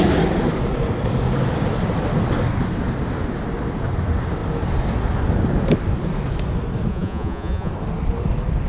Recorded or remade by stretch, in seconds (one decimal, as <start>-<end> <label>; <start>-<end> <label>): 0.0-6.9 recorded; 6.9-7.7 remade; 7.7-8.7 recorded